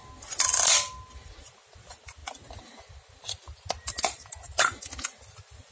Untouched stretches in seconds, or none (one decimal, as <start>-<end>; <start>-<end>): 0.0-5.7